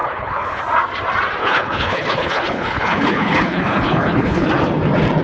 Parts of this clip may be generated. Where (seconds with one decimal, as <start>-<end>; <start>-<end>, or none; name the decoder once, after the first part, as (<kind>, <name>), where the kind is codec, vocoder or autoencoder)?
0.0-0.6 (codec, HILCodec); 1.4-4.5